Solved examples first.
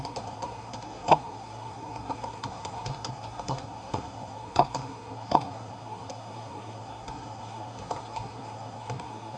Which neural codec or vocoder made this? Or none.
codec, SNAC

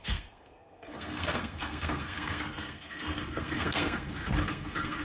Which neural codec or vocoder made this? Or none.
codec, SNAC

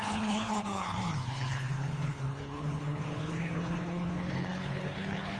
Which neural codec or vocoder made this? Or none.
codec, HILCodec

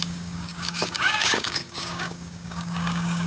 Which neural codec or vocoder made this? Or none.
codec, DAC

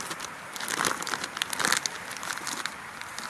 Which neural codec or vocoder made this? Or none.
none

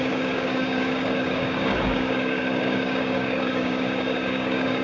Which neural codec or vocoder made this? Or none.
codec, DAC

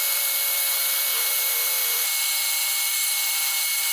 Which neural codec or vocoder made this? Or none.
vocoder, BigVGAN v2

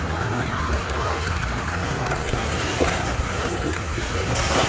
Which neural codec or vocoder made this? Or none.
codec, SNAC